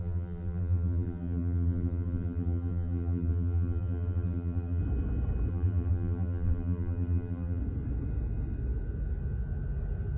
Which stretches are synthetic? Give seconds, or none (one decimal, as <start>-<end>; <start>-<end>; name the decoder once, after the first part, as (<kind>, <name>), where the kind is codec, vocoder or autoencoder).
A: 0.0-4.8 (vocoder, BigVGAN v2); 5.5-7.6